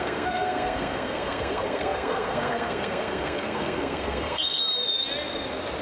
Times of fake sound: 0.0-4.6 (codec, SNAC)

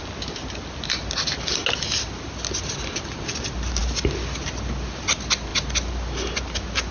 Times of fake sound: none

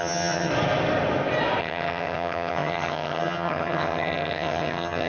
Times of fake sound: 0.0-0.5 (vocoder, HiFi-GAN); 1.6-5.1